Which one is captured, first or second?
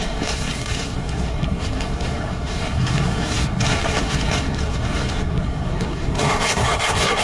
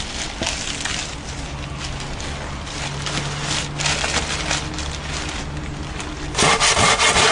second